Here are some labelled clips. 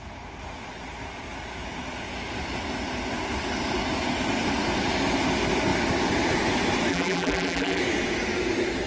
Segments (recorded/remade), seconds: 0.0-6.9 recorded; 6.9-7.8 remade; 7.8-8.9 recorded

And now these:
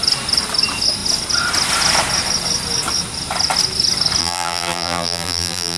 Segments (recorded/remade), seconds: 0.0-4.2 recorded; 4.2-5.8 remade